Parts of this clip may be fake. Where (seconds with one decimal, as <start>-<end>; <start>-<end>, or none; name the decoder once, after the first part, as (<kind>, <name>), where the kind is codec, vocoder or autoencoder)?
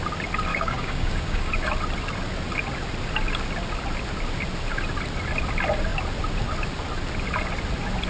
0.5-1.5 (codec, DAC)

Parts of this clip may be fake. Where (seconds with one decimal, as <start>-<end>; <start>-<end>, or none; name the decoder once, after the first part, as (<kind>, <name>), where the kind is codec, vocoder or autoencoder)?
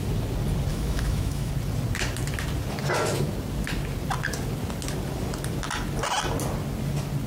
0.7-1.5 (autoencoder, DAC-VAE)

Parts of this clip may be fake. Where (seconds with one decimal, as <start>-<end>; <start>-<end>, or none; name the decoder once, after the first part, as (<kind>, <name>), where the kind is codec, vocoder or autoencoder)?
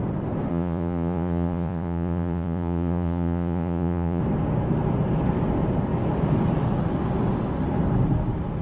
0.5-4.2 (vocoder, Vocos)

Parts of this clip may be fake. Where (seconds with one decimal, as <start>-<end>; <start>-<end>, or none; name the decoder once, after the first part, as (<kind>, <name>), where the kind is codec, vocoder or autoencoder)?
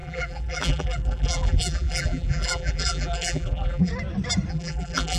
0.0-3.9 (vocoder, BigVGAN v2); 4.5-5.2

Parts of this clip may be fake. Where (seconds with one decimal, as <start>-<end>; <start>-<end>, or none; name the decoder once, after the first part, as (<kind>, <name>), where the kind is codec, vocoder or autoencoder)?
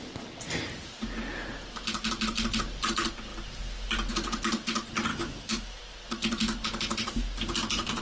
5.1-5.8 (autoencoder, DAC-VAE)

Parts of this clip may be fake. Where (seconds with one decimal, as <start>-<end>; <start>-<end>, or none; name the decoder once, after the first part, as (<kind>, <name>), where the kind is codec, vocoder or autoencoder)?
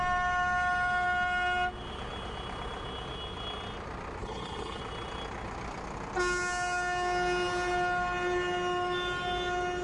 4.2-4.8 (codec, HILCodec)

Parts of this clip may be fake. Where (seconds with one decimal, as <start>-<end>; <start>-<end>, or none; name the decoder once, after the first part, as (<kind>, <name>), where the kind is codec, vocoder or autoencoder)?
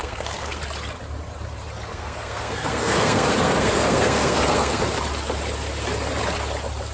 0.0-0.6 (codec, SNAC); 1.9-4.8